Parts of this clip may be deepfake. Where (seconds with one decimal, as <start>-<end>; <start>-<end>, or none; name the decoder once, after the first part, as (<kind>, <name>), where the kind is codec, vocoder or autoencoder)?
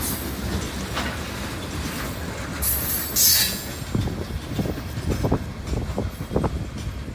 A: 3.3-3.8 (vocoder, Vocos)